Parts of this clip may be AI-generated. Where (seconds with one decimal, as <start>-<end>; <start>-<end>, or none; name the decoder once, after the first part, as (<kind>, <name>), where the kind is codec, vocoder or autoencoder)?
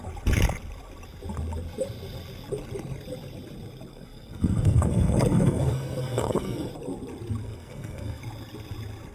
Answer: 3.9-6.7 (codec, SNAC); 7.4-8.2